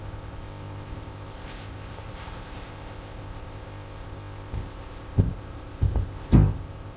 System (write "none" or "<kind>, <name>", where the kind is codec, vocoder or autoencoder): codec, ZipCodec